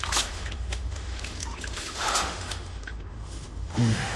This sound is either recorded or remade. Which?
remade